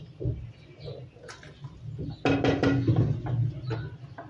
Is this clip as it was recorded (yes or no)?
yes